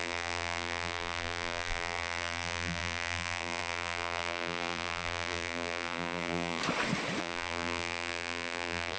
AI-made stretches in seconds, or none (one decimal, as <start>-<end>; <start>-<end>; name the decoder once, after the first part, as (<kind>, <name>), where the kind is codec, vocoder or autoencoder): 0.0-6.6 (vocoder, BigVGAN v2); 7.2-9.0

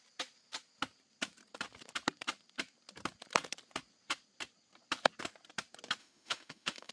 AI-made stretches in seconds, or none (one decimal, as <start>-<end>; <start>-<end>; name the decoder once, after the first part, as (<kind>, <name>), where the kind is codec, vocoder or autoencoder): 6.0-6.9 (autoencoder, DAC-VAE)

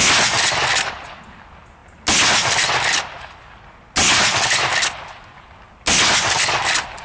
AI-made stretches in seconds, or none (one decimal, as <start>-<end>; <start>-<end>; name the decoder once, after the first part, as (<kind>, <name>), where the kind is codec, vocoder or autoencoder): none

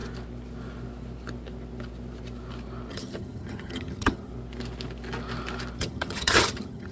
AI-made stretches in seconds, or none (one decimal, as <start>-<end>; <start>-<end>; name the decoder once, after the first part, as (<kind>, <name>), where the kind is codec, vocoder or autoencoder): 2.9-4.3 (vocoder, HiFi-GAN); 5.8-6.9

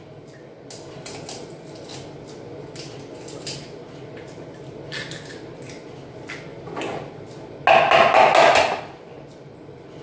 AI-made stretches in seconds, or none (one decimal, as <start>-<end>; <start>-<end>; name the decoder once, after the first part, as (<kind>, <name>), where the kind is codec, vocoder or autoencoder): none

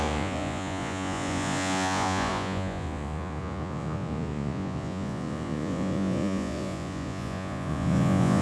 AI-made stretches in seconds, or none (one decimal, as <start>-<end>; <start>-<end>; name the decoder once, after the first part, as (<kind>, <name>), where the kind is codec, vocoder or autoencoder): 0.0-8.4 (vocoder, Vocos)

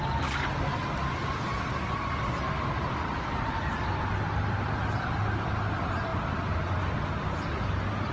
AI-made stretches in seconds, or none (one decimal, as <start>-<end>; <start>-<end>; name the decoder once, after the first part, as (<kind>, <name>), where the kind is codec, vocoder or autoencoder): none